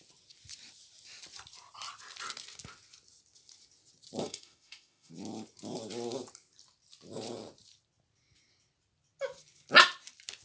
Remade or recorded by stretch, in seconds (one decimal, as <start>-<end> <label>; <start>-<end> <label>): 0.0-4.2 recorded; 4.2-5.1 remade; 5.1-10.4 recorded